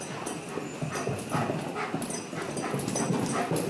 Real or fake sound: real